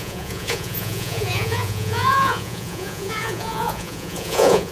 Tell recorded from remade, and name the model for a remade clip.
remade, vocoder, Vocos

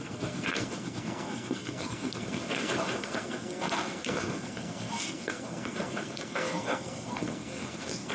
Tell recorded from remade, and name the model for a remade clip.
remade, codec, SNAC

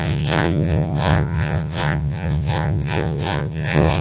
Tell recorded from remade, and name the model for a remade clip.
remade, vocoder, Vocos